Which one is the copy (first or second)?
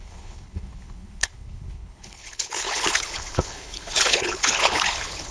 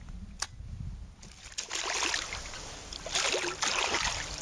first